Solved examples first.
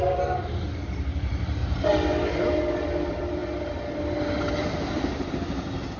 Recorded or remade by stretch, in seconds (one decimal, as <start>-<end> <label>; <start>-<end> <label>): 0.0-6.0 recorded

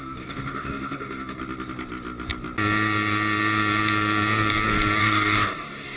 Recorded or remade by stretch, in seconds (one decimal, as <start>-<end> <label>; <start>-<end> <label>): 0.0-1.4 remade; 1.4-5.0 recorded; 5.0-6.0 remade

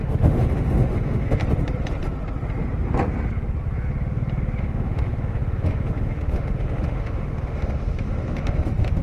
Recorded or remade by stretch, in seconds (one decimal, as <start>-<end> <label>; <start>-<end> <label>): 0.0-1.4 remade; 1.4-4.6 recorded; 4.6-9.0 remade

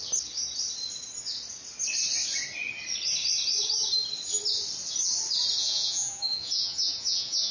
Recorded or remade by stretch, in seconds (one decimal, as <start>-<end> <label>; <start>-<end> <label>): 0.0-5.6 recorded; 5.6-7.5 remade

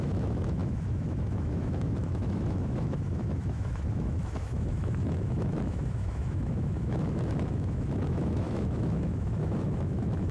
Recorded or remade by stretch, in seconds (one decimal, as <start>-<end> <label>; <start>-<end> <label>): 0.0-10.3 remade

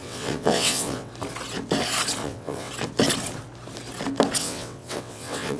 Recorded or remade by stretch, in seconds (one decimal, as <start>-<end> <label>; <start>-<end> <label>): 0.0-1.1 remade; 1.1-2.2 recorded; 2.2-2.7 remade; 2.7-4.4 recorded; 4.4-5.6 remade

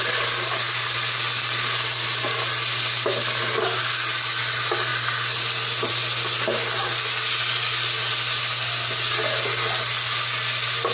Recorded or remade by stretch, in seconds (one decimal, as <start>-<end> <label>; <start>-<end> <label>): 0.0-10.9 recorded